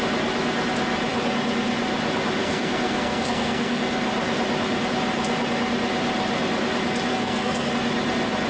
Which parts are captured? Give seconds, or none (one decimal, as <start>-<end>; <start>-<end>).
0.0-2.4; 3.8-7.1; 7.7-8.5